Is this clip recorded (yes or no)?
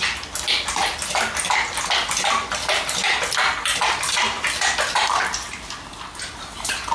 yes